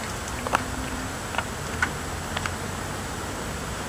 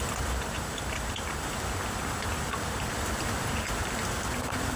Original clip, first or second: first